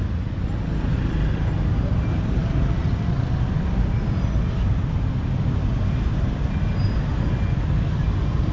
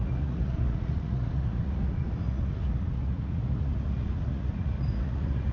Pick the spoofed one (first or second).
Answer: second